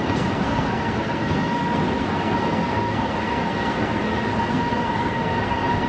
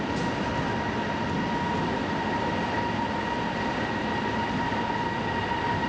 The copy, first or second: first